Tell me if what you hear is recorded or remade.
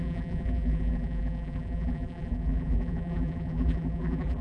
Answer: remade